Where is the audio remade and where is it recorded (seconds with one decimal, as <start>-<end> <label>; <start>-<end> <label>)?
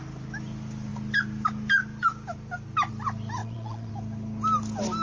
0.0-3.4 recorded; 3.4-3.9 remade; 3.9-5.0 recorded